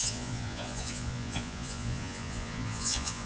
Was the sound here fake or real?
fake